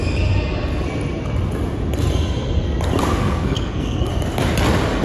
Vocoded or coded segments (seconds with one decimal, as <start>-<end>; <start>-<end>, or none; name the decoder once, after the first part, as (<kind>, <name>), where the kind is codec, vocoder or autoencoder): 3.2-4.1 (codec, SNAC)